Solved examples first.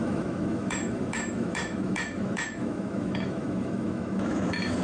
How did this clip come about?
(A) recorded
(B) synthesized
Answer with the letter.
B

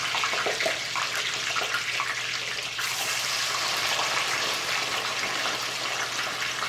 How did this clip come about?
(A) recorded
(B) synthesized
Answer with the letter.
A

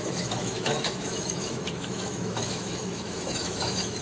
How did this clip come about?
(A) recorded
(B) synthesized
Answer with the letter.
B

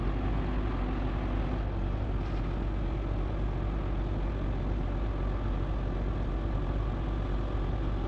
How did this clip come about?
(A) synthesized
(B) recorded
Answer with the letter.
B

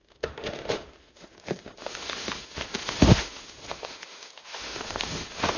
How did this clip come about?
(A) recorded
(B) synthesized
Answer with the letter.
B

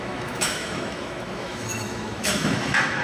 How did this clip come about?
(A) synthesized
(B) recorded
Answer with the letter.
A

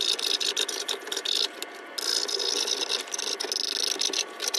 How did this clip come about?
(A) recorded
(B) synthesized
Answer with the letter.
A